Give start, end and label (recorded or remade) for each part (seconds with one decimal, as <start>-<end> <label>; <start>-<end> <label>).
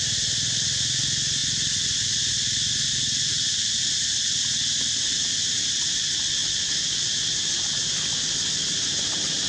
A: 0.0-6.4 recorded; 6.4-9.1 remade; 9.1-9.5 recorded